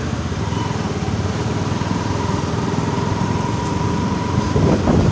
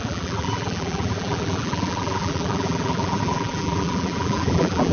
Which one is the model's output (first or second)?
second